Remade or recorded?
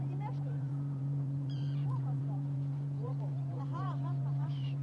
remade